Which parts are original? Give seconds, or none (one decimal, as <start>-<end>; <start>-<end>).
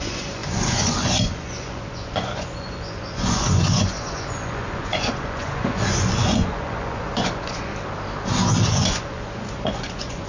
7.7-8.7